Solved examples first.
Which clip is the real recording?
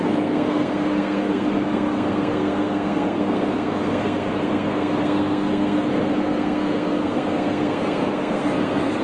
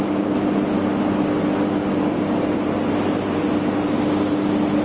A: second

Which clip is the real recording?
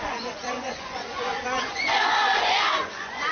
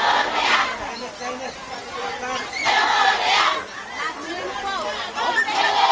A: second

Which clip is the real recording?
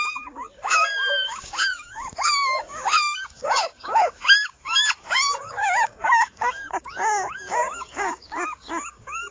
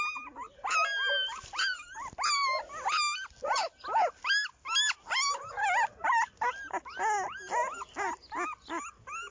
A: second